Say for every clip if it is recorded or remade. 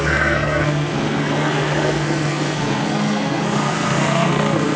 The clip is remade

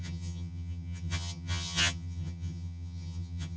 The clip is remade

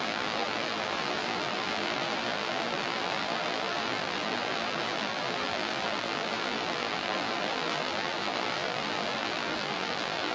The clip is remade